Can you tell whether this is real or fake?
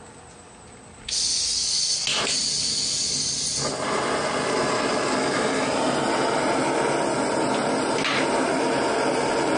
real